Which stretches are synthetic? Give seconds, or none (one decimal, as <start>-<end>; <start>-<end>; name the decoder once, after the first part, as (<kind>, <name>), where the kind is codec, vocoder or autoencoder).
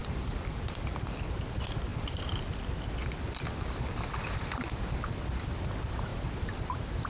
0.0-1.3 (vocoder, BigVGAN v2); 1.9-2.5; 6.1-7.1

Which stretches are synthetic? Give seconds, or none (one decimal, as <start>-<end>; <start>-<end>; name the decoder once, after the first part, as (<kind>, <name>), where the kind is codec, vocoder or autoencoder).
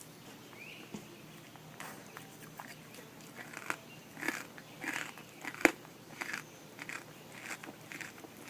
5.5-6.3 (vocoder, BigVGAN v2)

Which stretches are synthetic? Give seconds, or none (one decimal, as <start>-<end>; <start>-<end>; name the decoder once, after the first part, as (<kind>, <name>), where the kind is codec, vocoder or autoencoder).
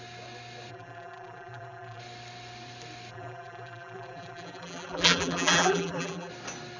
0.7-2.0 (vocoder, BigVGAN v2); 3.1-6.3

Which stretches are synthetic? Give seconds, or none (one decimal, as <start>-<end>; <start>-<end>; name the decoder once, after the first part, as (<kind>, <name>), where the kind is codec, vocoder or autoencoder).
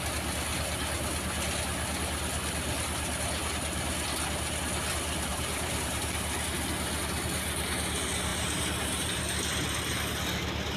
5.3-6.0 (vocoder, BigVGAN v2); 8.3-9.2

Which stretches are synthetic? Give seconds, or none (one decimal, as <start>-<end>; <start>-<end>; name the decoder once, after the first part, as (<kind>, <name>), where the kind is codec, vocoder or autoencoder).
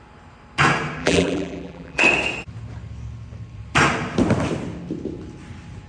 1.0-2.0 (vocoder, BigVGAN v2)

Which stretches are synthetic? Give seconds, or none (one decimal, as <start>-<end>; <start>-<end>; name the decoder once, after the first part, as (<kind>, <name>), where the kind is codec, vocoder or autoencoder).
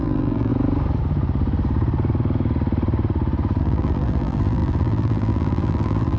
0.0-0.5 (vocoder, BigVGAN v2); 3.6-6.2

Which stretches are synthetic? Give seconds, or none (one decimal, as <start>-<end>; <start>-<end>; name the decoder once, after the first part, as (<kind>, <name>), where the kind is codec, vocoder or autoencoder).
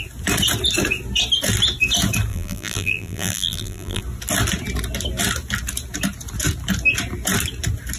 2.3-4.0 (vocoder, BigVGAN v2)